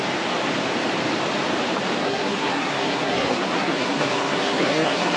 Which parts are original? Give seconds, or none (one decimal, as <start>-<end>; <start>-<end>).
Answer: 0.0-2.0